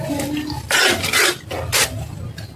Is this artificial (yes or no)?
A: no